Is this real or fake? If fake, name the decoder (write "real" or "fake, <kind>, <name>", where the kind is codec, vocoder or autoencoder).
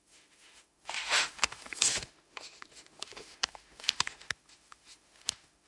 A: fake, autoencoder, DAC-VAE